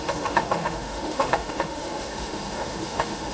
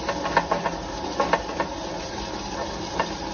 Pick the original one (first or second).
second